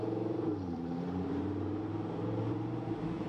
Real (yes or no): no